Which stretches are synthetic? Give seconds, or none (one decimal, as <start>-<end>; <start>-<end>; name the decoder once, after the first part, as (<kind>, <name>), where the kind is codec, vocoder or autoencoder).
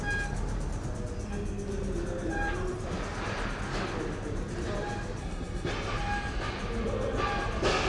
5.2-5.7 (codec, SNAC)